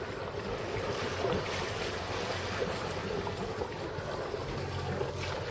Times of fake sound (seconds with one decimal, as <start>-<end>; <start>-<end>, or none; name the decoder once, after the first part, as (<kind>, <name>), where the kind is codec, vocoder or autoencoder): none